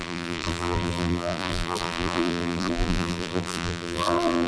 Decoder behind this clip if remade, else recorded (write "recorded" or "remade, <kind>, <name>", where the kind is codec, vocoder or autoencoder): remade, vocoder, BigVGAN v2